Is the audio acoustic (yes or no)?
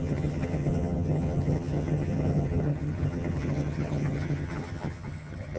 no